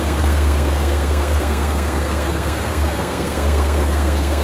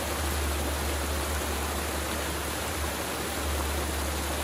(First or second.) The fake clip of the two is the first